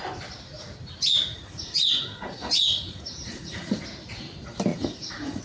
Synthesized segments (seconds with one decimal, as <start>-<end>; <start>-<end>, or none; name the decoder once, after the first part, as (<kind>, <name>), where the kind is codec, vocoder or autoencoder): 1.3-3.8 (vocoder, Vocos); 4.7-5.4